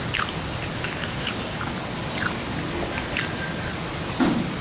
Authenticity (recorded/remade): recorded